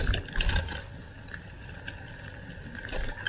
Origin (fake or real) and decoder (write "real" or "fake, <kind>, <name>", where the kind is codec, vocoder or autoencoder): real